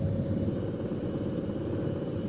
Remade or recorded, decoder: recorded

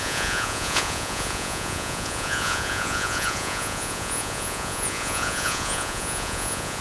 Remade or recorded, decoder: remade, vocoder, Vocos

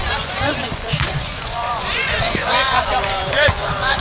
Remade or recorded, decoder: remade, vocoder, Vocos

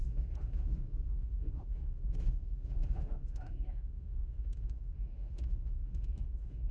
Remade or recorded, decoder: remade, autoencoder, DAC-VAE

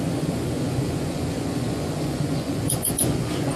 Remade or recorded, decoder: remade, vocoder, Vocos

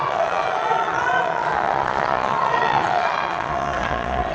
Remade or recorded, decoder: remade, vocoder, Vocos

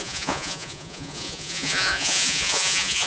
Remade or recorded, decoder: remade, vocoder, Vocos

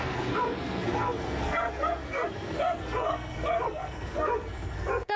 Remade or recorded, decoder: remade, codec, SNAC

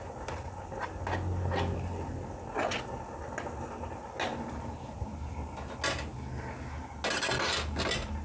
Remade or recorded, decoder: recorded